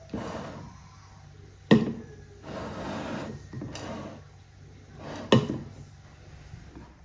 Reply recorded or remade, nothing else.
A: recorded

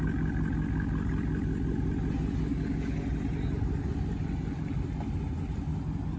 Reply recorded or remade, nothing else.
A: recorded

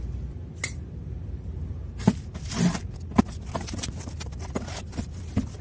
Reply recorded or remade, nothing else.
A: recorded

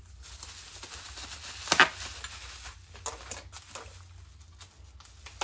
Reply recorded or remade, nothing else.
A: recorded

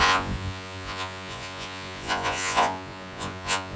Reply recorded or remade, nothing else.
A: remade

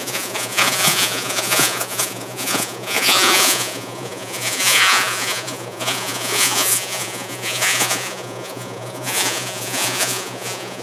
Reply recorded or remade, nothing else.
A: remade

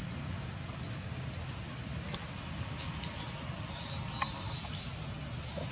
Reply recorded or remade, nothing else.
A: recorded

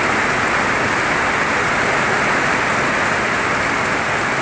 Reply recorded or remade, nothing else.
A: recorded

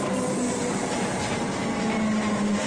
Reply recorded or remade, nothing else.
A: recorded